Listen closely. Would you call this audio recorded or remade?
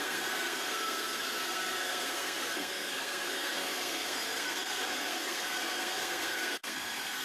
remade